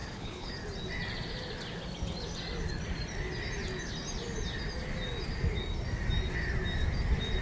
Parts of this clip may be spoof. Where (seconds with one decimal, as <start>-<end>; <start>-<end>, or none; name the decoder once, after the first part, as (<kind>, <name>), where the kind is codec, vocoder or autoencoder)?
0.0-0.5 (codec, HILCodec)